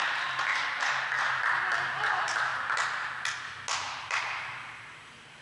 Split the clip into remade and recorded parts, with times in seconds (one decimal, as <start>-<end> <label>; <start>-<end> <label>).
0.0-2.5 remade; 2.5-3.9 recorded; 3.9-5.4 remade